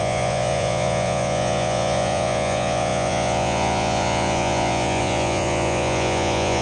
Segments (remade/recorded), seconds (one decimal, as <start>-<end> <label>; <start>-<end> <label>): 0.0-6.6 remade